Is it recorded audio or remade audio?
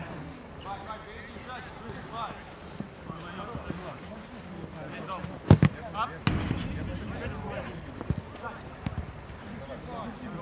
recorded